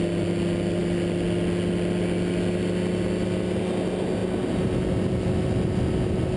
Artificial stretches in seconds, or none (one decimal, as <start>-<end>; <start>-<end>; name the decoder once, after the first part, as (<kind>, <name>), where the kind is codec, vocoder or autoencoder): none